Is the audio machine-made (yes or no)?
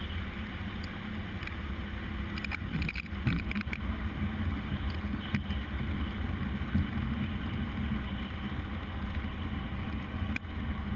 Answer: no